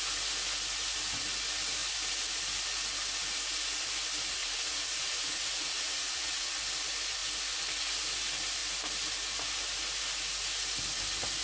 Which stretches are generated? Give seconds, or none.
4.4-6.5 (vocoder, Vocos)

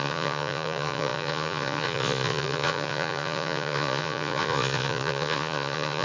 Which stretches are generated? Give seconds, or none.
0.0-6.0 (vocoder, Vocos)

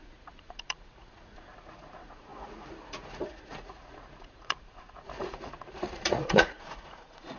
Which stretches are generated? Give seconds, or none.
0.0-7.4 (vocoder, Vocos)

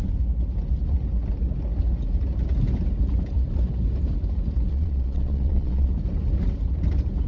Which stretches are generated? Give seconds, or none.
4.7-5.9 (vocoder, Vocos)

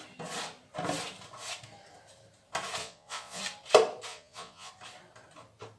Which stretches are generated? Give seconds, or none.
2.8-3.4 (vocoder, Vocos); 4.1-4.7

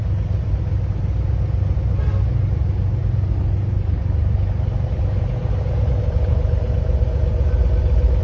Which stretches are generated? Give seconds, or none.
none

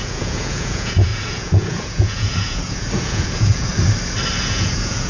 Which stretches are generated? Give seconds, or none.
0.0-3.7 (vocoder, Vocos); 4.4-5.1

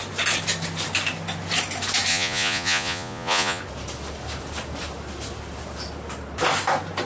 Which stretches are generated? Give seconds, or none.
2.1-3.6 (vocoder, Vocos)